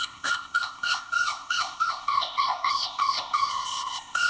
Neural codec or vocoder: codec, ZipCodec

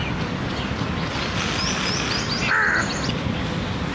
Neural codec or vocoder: none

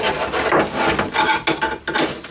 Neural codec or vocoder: none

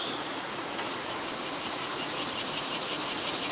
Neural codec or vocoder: vocoder, Vocos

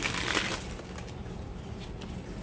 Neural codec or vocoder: none